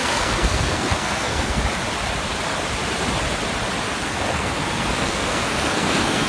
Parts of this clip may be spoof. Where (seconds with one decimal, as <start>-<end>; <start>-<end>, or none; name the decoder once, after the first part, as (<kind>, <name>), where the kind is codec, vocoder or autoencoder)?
0.0-1.6 (codec, SNAC); 4.0-6.3